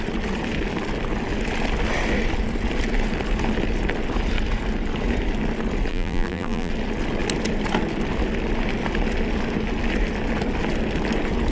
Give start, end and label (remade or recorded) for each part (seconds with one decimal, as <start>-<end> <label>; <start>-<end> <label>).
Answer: 0.0-5.9 recorded; 5.9-6.7 remade; 6.7-11.5 recorded